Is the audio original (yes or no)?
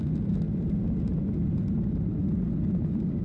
yes